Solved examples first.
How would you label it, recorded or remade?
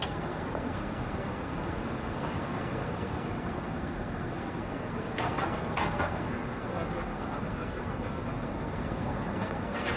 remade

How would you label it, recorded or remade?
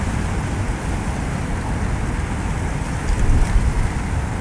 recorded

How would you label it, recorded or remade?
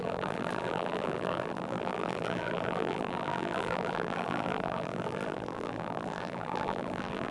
remade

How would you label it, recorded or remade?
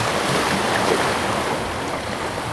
recorded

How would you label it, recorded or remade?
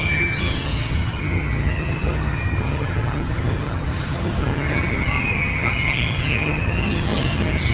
remade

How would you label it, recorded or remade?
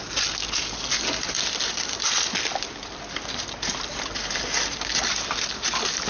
recorded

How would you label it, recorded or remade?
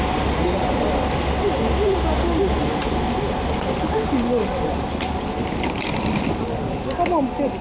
recorded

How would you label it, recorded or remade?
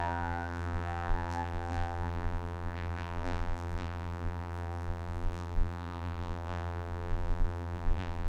remade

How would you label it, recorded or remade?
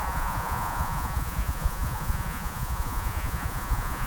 remade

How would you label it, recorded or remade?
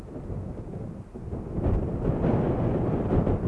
recorded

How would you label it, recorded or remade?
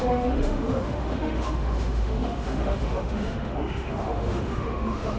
remade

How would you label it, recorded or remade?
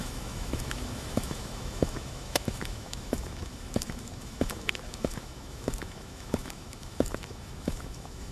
remade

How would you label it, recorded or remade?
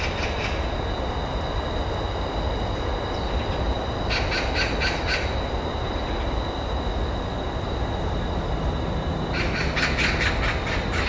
recorded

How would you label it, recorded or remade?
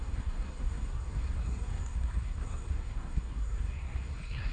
remade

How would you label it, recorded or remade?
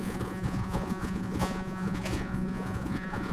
remade